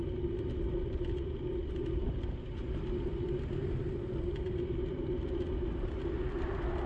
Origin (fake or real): real